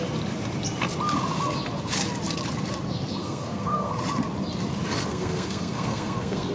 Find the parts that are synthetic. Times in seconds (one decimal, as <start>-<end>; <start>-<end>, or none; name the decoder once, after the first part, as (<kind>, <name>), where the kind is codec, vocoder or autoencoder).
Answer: 3.2-3.9 (codec, SNAC); 5.1-6.5